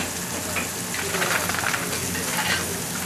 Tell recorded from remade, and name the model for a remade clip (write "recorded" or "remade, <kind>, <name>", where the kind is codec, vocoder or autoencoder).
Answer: recorded